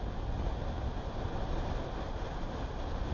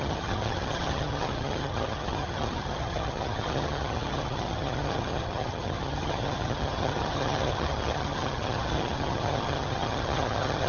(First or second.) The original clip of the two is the first